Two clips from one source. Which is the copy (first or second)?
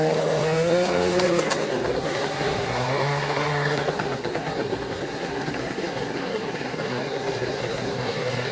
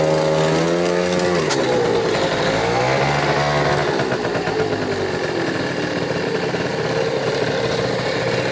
first